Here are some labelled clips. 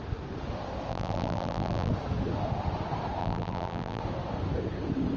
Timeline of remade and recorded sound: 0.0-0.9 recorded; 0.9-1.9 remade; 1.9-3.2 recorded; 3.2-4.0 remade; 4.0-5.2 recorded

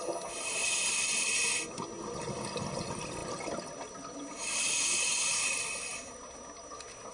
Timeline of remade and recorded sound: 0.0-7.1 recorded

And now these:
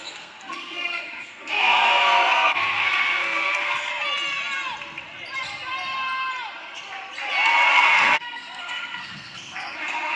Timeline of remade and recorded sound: 0.0-3.9 remade; 3.9-7.7 recorded; 7.7-10.2 remade